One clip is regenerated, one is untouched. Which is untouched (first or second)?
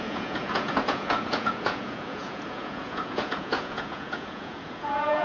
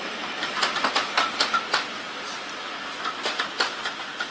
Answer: second